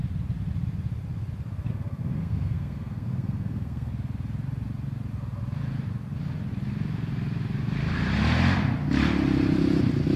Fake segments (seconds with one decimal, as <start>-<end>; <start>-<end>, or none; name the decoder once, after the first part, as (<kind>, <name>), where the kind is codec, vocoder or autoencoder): 1.7-3.9 (codec, SNAC)

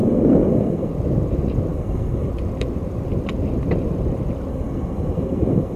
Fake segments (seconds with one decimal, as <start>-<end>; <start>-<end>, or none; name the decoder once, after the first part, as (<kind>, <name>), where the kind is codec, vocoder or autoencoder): 0.0-0.9 (codec, SNAC); 1.7-2.3; 4.5-5.8

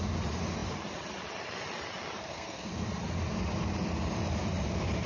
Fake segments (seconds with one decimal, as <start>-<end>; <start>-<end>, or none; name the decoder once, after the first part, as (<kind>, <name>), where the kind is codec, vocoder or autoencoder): 2.2-2.7 (codec, SNAC)

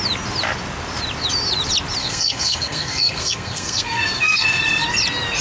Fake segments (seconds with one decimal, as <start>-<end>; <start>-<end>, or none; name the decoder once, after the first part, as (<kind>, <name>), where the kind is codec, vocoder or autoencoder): 2.0-4.6 (codec, SNAC)

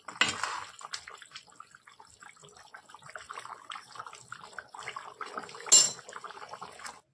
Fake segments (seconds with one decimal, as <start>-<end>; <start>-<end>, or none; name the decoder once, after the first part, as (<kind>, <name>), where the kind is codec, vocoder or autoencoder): none

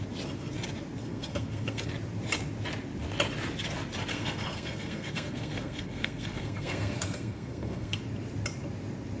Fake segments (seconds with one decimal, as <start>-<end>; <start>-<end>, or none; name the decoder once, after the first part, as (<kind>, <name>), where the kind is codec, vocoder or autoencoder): 1.0-1.9 (codec, SNAC); 4.1-8.0

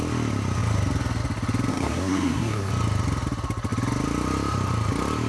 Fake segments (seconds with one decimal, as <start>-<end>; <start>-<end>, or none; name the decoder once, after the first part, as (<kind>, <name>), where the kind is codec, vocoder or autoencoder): 1.7-2.7 (codec, SNAC)